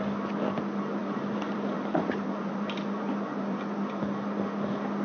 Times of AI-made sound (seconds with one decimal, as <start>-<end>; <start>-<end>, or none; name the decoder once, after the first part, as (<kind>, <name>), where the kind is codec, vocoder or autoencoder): 1.0-4.0 (vocoder, BigVGAN v2)